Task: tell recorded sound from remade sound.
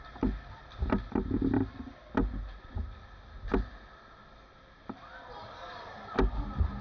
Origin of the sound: recorded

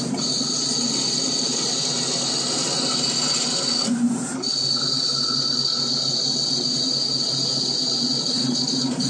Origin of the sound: recorded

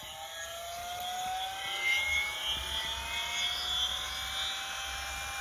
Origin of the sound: recorded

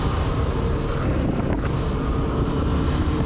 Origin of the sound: remade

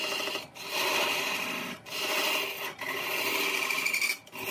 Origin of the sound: recorded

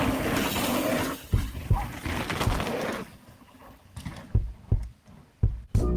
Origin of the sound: recorded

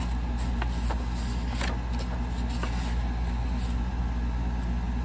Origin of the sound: recorded